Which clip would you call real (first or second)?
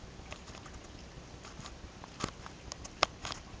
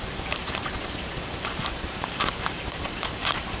first